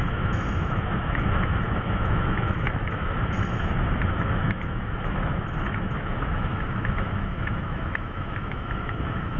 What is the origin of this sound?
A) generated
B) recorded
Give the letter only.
A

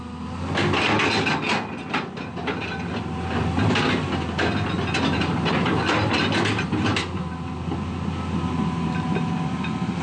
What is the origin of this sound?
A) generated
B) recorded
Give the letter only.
B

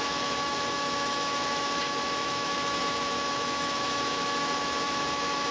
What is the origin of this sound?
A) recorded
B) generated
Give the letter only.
B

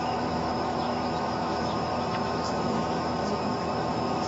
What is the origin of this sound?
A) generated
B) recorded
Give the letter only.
A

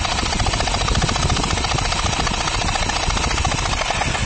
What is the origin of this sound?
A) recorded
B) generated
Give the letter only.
A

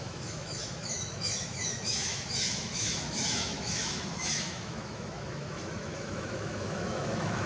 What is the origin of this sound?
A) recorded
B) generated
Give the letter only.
B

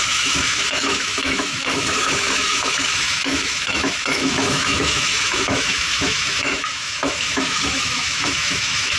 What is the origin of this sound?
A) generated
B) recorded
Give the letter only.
A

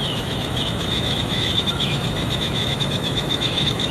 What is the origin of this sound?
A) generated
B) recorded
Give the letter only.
A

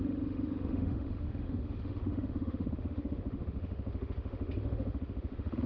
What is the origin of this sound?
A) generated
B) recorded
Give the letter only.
A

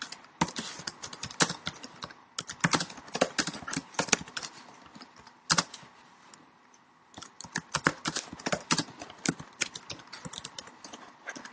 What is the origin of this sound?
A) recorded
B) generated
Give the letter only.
A